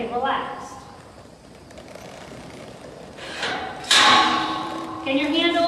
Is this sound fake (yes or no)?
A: yes